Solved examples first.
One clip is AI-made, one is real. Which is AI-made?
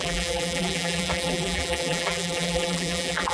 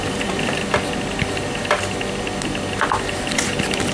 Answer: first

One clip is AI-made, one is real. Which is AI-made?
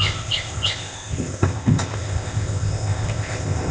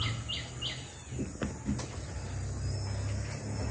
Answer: first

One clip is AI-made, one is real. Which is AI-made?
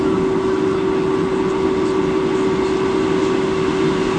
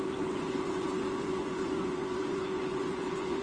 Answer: second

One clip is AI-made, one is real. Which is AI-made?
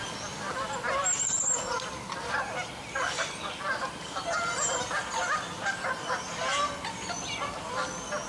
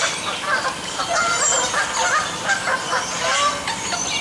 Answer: second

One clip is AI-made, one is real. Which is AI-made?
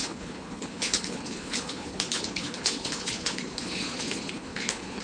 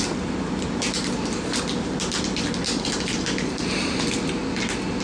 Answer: first